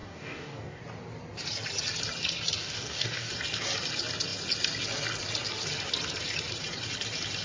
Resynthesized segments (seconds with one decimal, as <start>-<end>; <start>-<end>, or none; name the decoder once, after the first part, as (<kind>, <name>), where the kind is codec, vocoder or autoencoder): 0.0-0.8 (codec, DAC); 2.6-3.3